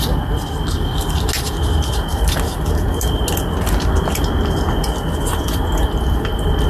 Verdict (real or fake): real